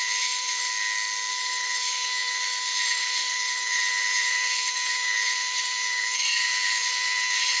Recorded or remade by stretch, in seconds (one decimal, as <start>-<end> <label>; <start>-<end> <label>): 0.0-0.7 remade; 0.7-1.3 recorded; 1.3-7.6 remade